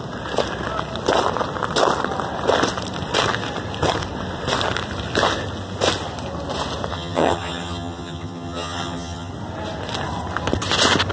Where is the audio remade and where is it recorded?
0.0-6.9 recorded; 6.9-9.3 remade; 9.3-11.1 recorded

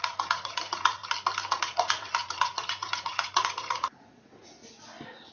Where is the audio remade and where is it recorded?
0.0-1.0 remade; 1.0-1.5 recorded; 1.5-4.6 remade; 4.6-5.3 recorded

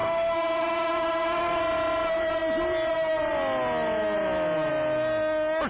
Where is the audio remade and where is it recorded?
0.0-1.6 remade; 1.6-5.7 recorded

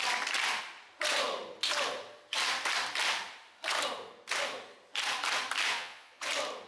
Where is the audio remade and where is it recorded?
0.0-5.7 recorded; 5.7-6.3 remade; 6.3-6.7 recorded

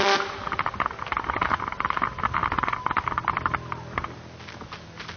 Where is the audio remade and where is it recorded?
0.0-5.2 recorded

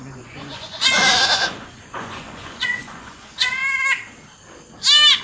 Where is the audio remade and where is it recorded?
0.0-3.6 remade; 3.6-5.2 recorded